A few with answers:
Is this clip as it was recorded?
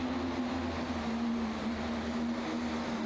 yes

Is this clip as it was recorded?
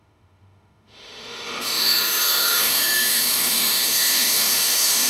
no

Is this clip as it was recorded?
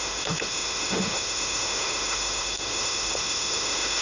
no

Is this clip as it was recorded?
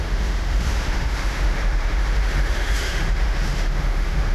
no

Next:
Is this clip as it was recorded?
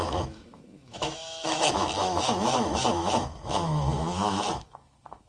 no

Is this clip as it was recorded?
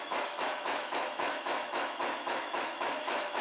no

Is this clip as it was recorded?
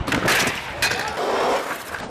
yes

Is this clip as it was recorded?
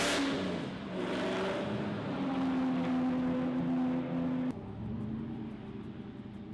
yes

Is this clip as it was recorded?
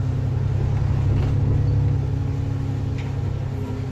yes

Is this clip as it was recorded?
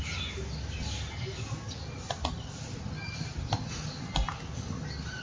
yes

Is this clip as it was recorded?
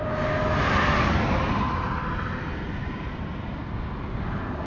yes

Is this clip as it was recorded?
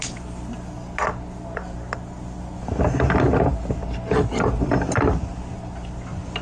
yes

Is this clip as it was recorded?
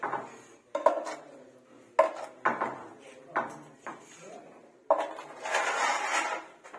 yes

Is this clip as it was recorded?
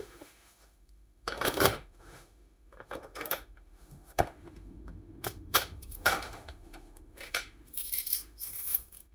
no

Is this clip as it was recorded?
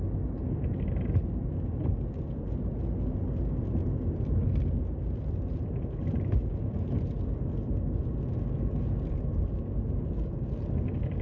yes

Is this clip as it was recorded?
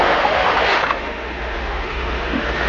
no